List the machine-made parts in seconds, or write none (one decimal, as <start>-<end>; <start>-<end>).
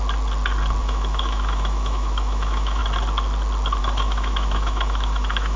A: 0.8-2.8; 3.8-5.6